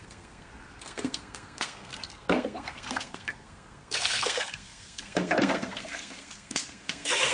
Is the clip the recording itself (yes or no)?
no